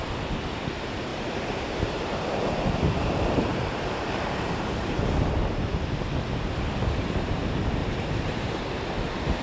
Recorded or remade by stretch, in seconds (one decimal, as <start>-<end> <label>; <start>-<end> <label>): 0.0-1.1 recorded; 1.1-5.0 remade; 5.0-7.8 recorded; 7.8-8.5 remade; 8.5-9.4 recorded